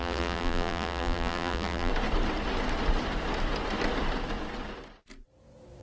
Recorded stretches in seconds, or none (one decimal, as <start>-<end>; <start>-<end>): 1.9-5.8